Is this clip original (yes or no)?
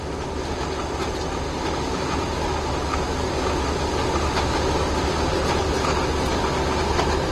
yes